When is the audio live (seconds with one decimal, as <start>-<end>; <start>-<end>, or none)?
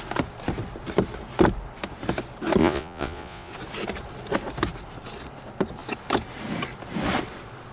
0.0-2.6; 3.5-7.7